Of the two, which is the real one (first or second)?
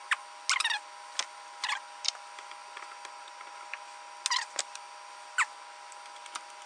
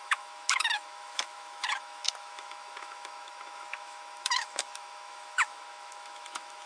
first